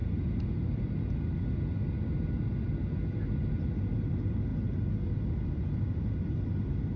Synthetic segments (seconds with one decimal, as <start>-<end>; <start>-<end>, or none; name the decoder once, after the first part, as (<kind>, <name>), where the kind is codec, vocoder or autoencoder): none